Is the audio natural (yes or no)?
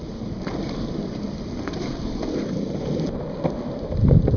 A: no